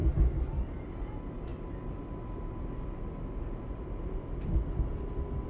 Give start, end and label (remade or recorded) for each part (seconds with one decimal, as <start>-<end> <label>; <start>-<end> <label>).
0.0-5.5 recorded